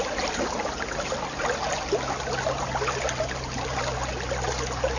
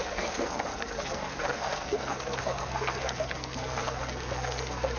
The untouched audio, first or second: first